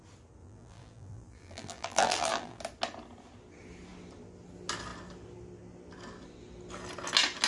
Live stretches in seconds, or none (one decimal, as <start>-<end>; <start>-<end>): 0.0-0.4; 2.6-7.5